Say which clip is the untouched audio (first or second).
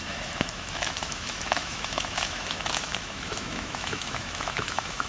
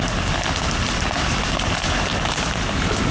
second